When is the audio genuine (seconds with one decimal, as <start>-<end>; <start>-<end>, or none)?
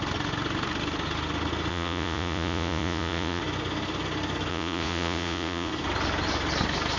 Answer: 0.0-1.7; 3.4-4.5; 5.7-7.0